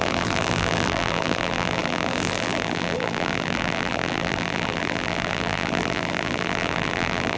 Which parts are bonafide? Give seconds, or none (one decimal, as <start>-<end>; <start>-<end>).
none